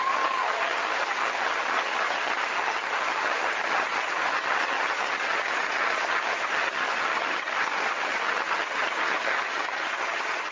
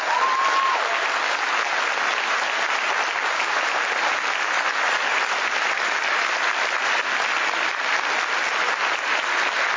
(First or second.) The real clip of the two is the second